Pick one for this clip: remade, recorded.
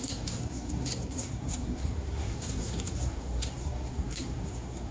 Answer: remade